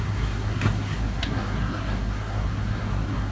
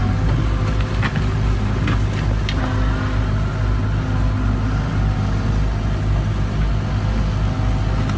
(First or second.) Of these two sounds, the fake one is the first